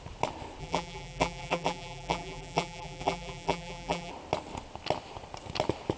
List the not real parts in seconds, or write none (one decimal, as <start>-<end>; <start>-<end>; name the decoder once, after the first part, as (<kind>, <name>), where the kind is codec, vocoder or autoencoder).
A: 0.6-4.1 (vocoder, BigVGAN v2)